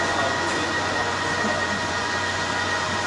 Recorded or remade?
remade